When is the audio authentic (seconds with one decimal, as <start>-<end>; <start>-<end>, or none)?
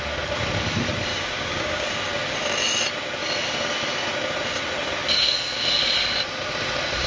0.0-1.1; 1.9-7.1